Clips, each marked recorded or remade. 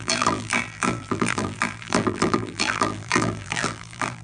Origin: remade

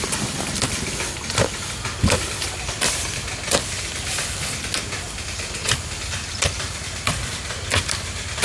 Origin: recorded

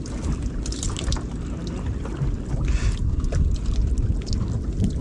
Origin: recorded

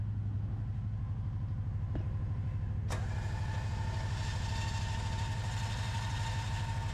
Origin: recorded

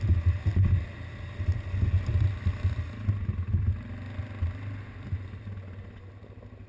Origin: recorded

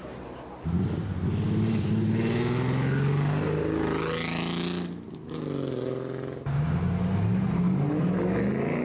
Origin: recorded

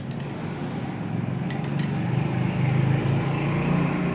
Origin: recorded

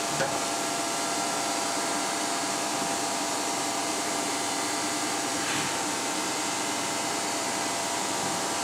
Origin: remade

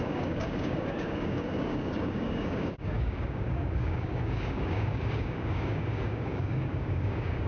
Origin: remade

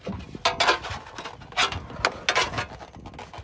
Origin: recorded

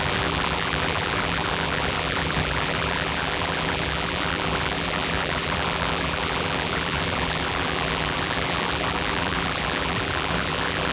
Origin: remade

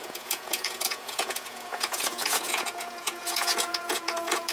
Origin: remade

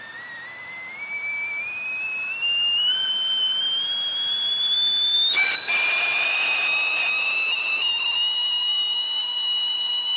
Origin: recorded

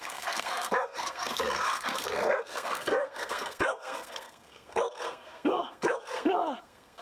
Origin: remade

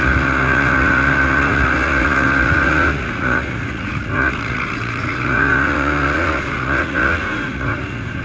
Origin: remade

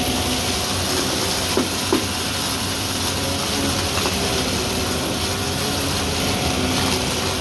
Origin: recorded